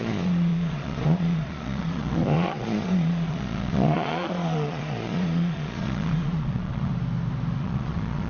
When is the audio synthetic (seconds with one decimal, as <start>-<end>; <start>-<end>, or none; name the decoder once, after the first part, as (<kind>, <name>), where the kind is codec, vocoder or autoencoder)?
0.0-6.9 (vocoder, Vocos); 7.6-8.3